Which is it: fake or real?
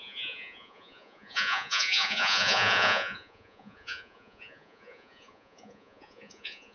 fake